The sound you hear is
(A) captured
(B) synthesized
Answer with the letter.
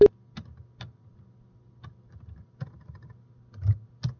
A